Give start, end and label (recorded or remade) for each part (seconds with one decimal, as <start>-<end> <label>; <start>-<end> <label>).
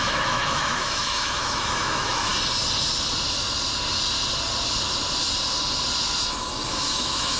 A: 0.0-2.3 remade; 2.3-6.7 recorded; 6.7-7.4 remade